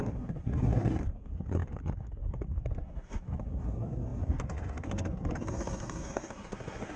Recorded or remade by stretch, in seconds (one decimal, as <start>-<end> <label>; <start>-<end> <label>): 0.0-7.0 remade